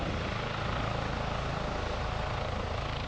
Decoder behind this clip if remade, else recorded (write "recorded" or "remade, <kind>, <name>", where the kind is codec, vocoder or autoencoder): recorded